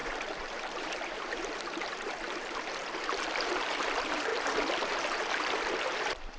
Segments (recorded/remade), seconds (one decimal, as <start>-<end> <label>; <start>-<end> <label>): 0.0-6.4 remade

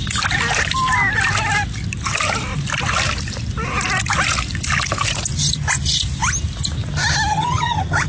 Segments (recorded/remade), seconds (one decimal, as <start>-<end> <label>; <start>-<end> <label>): 0.0-7.3 recorded; 7.3-8.1 remade

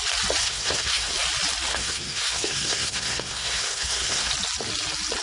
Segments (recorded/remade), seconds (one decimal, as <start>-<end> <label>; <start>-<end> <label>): 0.0-0.4 recorded; 0.4-1.1 remade; 1.1-1.7 recorded; 1.7-4.3 remade; 4.3-5.2 recorded

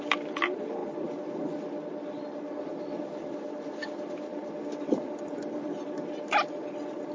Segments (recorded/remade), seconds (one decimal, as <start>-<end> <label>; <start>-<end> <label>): 0.0-7.1 recorded